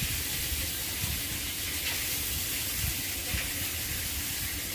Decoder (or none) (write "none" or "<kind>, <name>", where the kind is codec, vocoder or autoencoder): none